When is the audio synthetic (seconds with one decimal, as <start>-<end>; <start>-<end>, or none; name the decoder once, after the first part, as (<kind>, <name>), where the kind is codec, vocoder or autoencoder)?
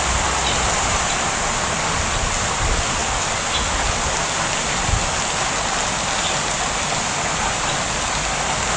none